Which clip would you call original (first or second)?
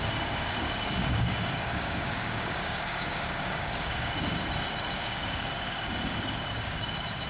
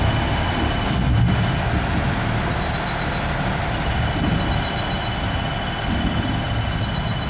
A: second